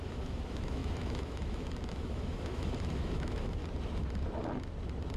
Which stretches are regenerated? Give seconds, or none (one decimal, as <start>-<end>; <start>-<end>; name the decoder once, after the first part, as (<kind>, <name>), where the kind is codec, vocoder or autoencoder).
0.0-3.6 (autoencoder, DAC-VAE)